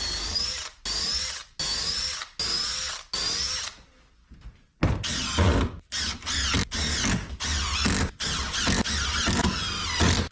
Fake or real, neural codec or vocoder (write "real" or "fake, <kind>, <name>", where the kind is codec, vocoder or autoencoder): real